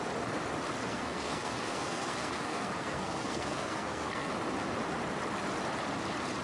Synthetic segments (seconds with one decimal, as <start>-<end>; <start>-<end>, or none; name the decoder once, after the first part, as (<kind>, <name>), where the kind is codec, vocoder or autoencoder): 0.8-4.3 (codec, SNAC)